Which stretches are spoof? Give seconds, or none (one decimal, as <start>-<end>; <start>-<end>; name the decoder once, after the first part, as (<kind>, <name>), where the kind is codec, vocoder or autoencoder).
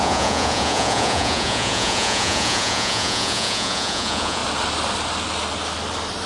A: 0.0-4.4 (vocoder, Vocos)